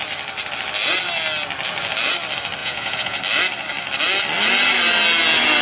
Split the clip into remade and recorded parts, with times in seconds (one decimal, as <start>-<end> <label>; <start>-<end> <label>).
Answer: 0.0-2.6 recorded; 2.6-3.2 remade; 3.2-5.6 recorded